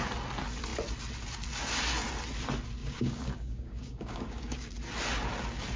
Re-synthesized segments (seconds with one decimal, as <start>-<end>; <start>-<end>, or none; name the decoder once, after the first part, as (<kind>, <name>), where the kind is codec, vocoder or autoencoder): 2.8-4.7 (codec, DAC)